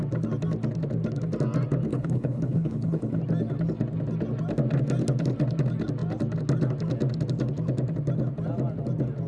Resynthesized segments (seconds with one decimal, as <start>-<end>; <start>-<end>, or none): 1.9-3.2